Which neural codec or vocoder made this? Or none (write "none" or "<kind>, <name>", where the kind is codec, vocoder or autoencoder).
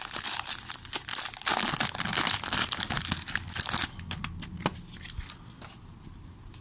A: none